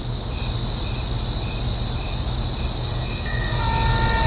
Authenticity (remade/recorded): recorded